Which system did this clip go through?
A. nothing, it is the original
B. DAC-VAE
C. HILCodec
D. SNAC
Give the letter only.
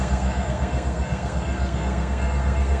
D